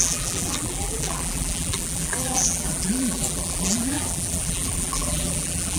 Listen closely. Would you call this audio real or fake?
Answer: fake